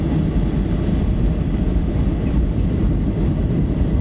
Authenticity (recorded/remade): remade